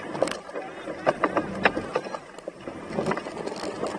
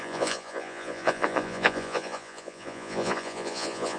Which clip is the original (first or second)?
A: first